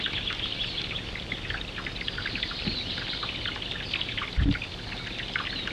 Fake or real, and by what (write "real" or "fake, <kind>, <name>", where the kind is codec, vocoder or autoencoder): real